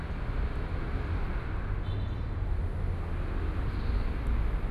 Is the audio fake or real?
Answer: real